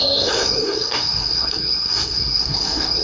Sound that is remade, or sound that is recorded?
remade